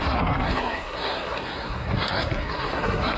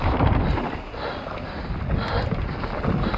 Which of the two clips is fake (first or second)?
first